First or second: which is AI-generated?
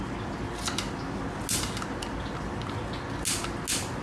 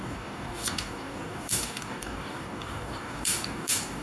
second